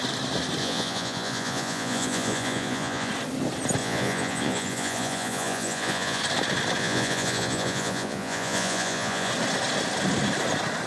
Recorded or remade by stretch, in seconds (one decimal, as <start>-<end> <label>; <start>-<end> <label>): 0.0-0.6 recorded; 0.6-3.1 remade; 3.1-3.8 recorded; 3.8-6.2 remade; 6.2-6.8 recorded; 6.8-9.3 remade; 9.3-10.9 recorded